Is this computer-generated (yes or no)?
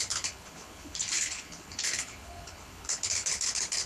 yes